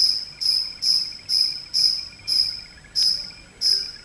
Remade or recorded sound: recorded